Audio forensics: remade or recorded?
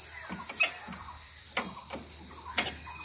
recorded